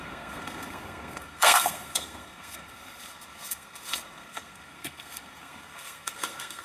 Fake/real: fake